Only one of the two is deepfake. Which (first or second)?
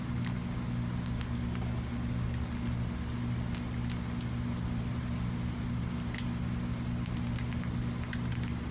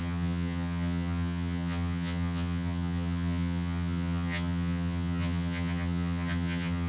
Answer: second